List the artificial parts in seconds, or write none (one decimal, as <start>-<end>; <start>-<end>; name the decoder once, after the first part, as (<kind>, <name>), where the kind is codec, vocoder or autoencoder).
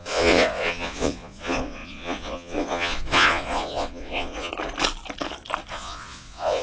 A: 0.0-4.5 (vocoder, Vocos); 5.7-6.6